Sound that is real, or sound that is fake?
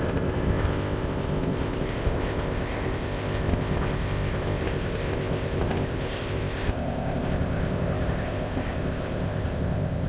fake